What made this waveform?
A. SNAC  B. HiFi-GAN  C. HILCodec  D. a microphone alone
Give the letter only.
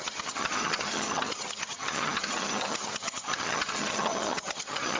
B